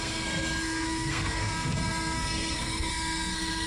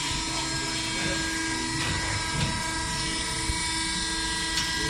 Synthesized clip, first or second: first